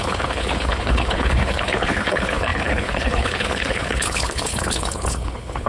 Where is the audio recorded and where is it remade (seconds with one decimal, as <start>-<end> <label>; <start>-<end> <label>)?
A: 0.0-5.7 remade